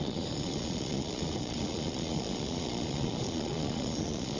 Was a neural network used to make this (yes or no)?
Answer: yes